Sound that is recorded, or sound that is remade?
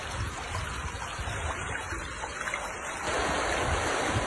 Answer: recorded